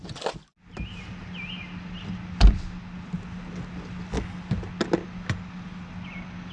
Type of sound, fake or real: real